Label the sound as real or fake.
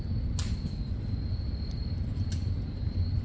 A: real